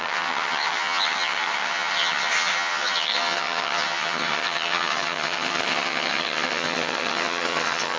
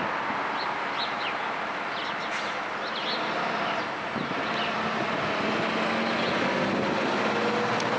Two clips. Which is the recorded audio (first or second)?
second